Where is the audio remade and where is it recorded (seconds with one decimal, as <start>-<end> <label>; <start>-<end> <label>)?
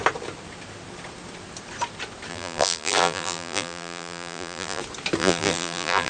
0.0-2.3 recorded; 2.3-4.8 remade; 4.8-5.2 recorded; 5.2-6.1 remade